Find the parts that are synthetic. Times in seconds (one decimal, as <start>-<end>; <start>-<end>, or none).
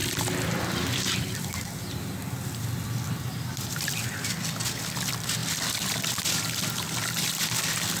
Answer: 0.0-4.2